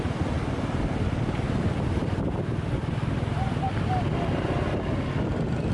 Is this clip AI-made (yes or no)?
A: no